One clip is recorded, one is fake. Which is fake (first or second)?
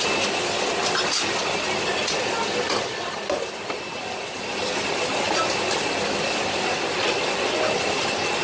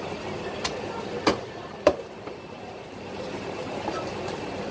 second